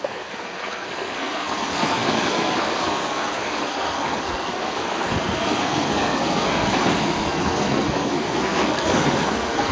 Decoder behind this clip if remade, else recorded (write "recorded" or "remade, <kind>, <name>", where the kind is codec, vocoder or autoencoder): remade, codec, SNAC